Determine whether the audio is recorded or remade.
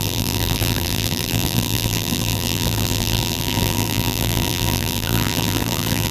remade